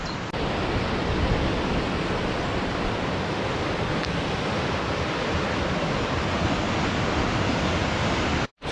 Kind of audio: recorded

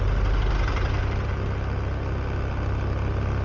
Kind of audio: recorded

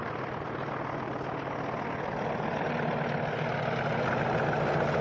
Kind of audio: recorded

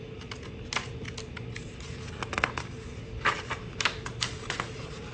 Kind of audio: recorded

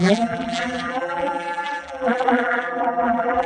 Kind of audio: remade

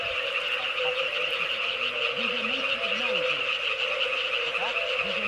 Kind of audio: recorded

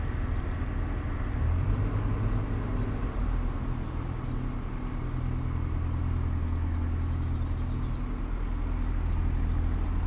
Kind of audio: recorded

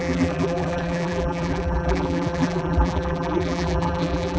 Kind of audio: remade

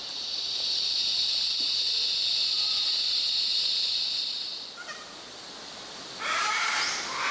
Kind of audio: remade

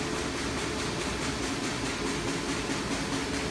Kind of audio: recorded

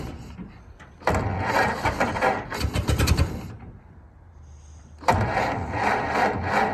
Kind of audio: recorded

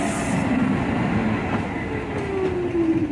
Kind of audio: recorded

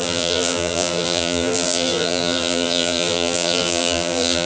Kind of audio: remade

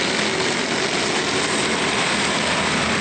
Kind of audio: remade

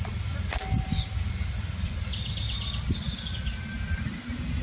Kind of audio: recorded